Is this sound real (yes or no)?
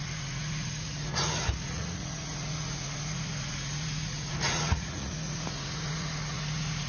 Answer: no